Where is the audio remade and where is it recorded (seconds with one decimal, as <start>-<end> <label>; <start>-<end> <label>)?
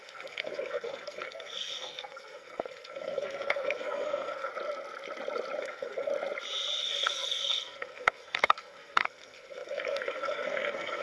0.0-4.5 remade; 4.5-5.6 recorded; 5.6-6.1 remade; 6.1-6.8 recorded; 6.8-11.0 remade